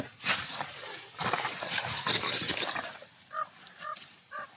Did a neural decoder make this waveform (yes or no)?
yes